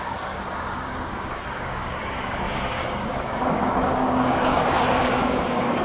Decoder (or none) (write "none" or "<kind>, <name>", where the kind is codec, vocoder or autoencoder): codec, DAC